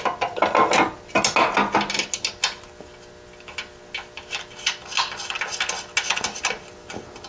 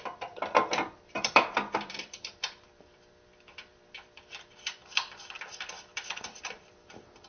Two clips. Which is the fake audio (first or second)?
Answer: second